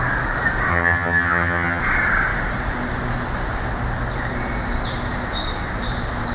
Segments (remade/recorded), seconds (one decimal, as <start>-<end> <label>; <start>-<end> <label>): 0.0-0.7 recorded; 0.7-1.8 remade; 1.8-6.3 recorded